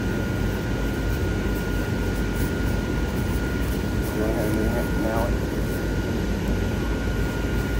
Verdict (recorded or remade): recorded